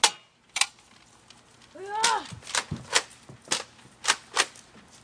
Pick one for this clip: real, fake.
real